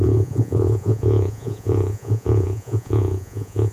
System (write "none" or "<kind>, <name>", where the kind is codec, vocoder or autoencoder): vocoder, Vocos